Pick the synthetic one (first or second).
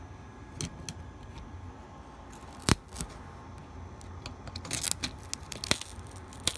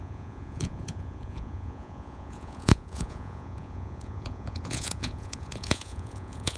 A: second